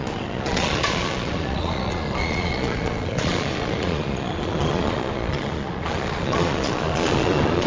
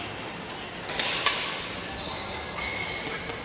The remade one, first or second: first